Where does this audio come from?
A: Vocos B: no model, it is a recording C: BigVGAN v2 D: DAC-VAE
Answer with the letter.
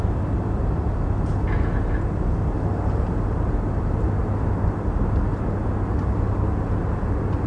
B